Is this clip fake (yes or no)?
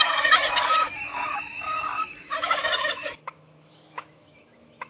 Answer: yes